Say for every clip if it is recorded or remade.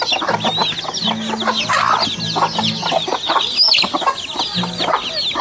recorded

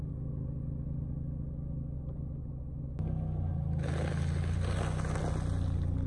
recorded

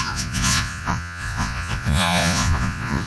remade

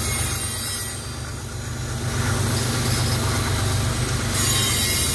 recorded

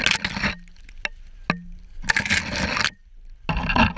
recorded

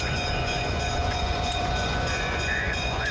remade